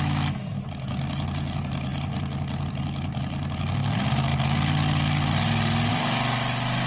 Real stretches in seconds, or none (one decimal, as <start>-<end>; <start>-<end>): 0.0-6.9